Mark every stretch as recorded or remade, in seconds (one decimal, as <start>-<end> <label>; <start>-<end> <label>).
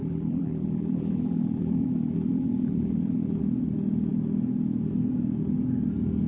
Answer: 0.0-3.4 remade; 3.4-6.3 recorded